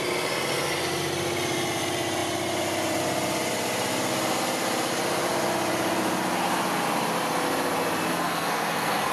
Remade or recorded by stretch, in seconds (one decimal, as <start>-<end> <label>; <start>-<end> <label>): 0.0-8.1 recorded; 8.1-9.1 remade